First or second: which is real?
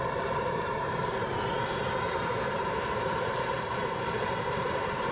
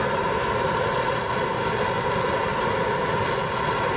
second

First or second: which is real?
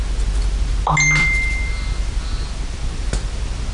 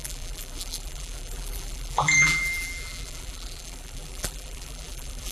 first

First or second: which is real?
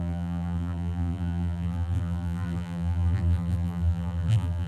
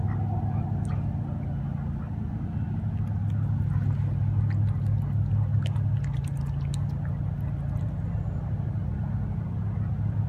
second